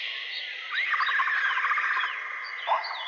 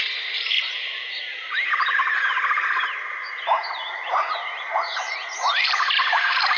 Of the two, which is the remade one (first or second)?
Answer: second